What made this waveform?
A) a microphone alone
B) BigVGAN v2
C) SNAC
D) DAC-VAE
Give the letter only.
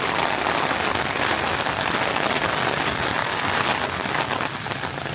A